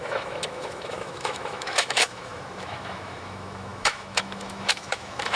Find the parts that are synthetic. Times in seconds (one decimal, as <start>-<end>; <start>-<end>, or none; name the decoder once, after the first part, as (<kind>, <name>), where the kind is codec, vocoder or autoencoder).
0.0-5.4 (autoencoder, DAC-VAE)